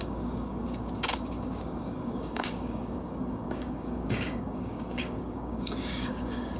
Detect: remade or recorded remade